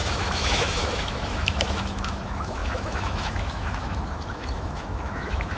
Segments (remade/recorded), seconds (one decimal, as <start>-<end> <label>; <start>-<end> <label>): 0.0-5.6 remade